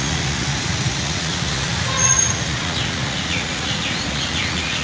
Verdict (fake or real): fake